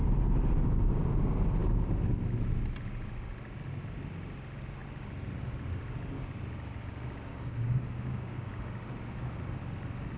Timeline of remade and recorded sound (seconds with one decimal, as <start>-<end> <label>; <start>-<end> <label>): 0.0-7.3 recorded; 7.3-8.5 remade; 8.5-10.2 recorded